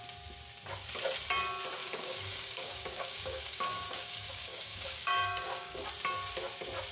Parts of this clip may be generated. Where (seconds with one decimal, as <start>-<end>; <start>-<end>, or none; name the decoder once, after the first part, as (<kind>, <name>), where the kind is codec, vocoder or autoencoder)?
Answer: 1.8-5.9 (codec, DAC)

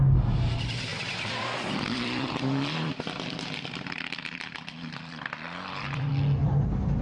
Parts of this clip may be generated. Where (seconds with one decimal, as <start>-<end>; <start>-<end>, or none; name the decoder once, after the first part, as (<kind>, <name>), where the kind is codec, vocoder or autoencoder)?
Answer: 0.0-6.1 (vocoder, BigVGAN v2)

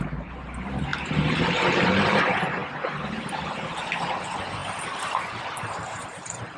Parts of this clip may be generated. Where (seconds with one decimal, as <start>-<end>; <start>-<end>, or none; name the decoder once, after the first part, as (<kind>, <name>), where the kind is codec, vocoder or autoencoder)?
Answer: 0.0-2.6 (vocoder, BigVGAN v2); 3.3-6.6